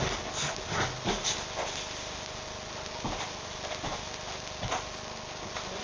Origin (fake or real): real